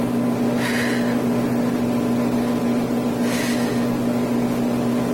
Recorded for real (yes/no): yes